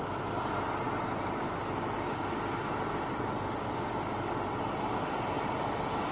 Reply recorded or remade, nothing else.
recorded